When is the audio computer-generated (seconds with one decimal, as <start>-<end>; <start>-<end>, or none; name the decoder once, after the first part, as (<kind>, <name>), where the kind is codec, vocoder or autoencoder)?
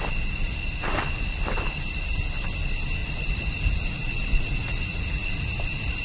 3.0-6.0 (vocoder, Vocos)